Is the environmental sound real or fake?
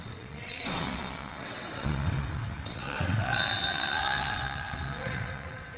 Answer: fake